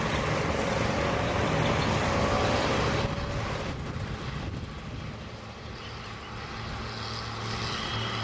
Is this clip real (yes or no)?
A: yes